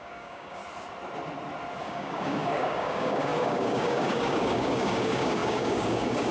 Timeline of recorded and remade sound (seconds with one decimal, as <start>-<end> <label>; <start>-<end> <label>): 0.0-0.6 remade; 0.6-1.8 recorded; 1.8-6.3 remade